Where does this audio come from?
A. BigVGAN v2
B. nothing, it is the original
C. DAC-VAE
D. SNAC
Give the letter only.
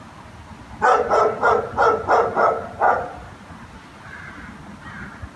B